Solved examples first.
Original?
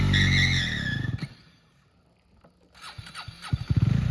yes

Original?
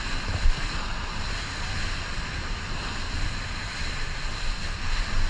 yes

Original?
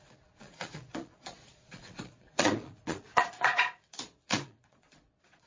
no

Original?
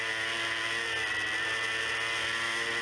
yes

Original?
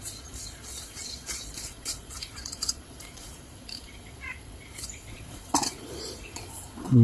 no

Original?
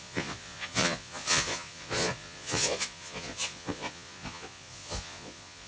no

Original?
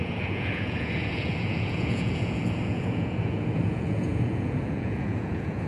no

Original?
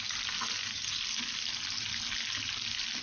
yes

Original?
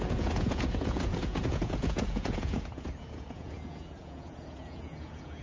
no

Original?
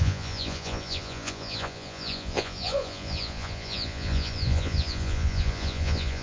no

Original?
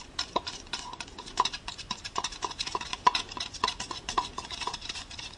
no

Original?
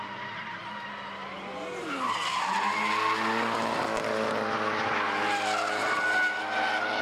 yes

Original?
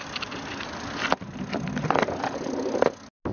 yes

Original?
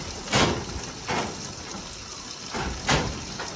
yes